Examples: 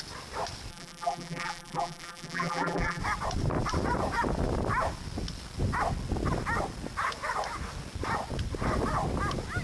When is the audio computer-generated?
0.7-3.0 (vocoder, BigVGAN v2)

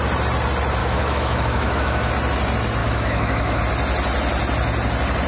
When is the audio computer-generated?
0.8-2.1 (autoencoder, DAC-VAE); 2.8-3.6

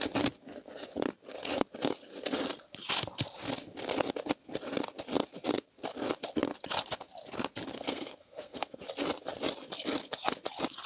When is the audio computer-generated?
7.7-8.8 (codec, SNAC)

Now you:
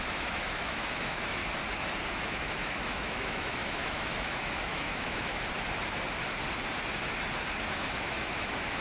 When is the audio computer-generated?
0.0-1.4 (autoencoder, DAC-VAE); 2.1-5.3; 7.6-8.8